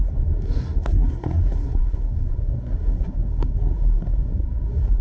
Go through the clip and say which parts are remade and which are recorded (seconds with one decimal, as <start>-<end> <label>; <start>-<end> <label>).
0.0-5.0 remade